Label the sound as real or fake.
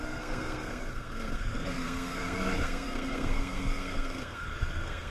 fake